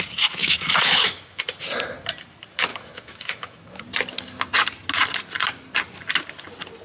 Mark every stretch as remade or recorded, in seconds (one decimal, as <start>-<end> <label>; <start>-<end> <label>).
0.0-0.4 recorded; 0.4-1.4 remade; 1.4-2.7 recorded; 2.7-3.8 remade; 3.8-6.8 recorded